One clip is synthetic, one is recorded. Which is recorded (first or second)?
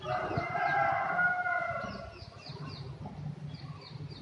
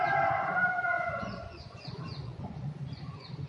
first